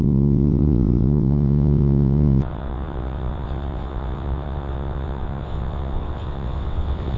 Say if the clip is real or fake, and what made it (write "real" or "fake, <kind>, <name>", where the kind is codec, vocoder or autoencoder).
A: fake, vocoder, WaveNeXt